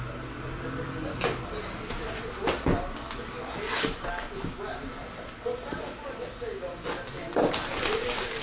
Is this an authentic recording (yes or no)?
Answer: yes